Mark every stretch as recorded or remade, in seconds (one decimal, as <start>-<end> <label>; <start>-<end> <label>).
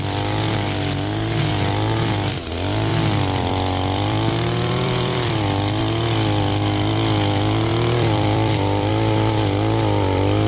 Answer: 0.0-2.9 recorded; 2.9-5.8 remade; 5.8-7.7 recorded; 7.7-8.9 remade; 8.9-10.5 recorded